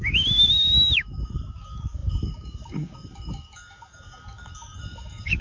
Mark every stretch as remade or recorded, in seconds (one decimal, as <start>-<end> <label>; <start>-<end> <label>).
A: 0.0-5.4 remade